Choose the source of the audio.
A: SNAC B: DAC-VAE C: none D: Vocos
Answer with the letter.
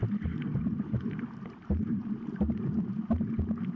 C